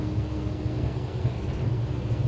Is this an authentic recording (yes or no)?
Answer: no